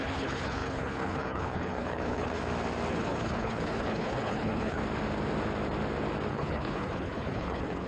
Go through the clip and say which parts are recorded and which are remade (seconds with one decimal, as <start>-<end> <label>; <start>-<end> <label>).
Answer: 0.0-2.4 remade; 2.4-2.9 recorded; 2.9-4.8 remade; 4.8-6.3 recorded; 6.3-7.9 remade